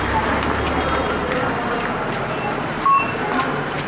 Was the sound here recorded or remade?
recorded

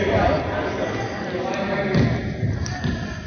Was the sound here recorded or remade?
recorded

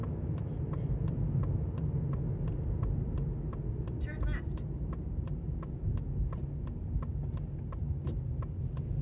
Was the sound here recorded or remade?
recorded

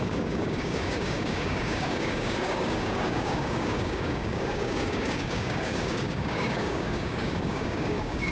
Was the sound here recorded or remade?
remade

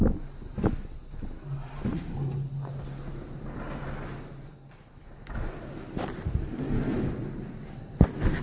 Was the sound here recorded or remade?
recorded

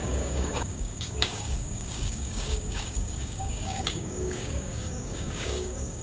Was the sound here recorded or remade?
remade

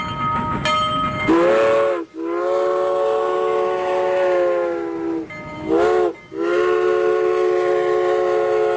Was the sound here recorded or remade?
recorded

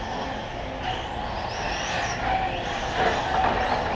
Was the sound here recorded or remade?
recorded